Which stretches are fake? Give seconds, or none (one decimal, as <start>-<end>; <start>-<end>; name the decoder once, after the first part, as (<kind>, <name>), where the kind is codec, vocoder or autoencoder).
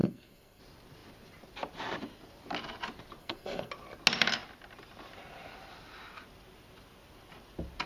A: 0.0-0.6 (codec, SNAC); 3.2-3.7